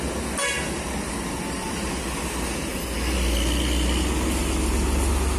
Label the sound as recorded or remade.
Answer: recorded